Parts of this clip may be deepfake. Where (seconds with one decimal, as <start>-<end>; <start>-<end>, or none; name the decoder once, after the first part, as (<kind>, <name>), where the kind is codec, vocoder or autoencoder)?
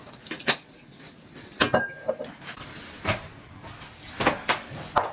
2.0-3.5 (vocoder, BigVGAN v2)